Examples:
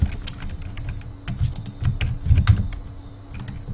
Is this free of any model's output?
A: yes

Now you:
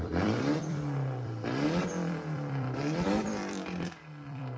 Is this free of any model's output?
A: no